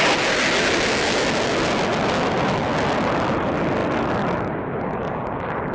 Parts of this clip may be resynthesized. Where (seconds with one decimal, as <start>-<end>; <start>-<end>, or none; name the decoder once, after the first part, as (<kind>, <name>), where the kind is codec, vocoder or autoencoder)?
none